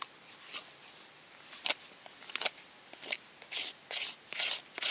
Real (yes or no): yes